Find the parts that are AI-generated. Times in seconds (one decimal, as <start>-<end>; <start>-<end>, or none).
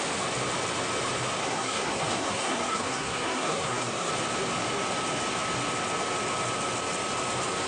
1.4-4.1